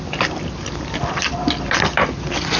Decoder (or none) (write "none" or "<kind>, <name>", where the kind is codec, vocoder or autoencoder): vocoder, BigVGAN v2